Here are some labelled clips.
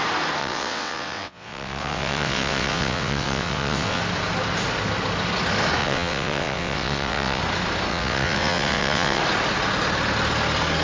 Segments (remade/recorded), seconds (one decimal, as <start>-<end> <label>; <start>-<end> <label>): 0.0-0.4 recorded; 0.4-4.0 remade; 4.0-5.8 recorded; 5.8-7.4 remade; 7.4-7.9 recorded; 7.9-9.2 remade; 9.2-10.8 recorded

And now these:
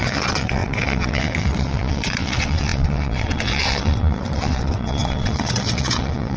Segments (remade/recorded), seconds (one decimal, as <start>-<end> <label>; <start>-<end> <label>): 0.0-6.4 remade

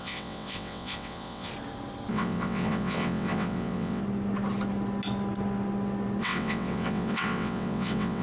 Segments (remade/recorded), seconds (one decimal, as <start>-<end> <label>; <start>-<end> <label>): 0.0-1.5 remade; 1.5-2.1 recorded; 2.1-4.0 remade; 4.0-6.2 recorded; 6.2-8.2 remade